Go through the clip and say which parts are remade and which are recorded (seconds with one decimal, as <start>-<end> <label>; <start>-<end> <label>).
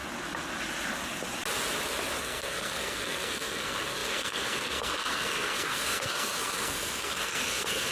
0.0-2.2 recorded; 2.2-7.9 remade